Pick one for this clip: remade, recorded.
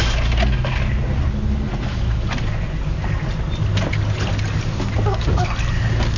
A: recorded